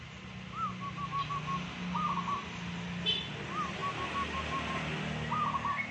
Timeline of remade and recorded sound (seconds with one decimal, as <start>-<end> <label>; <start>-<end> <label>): 0.0-5.9 recorded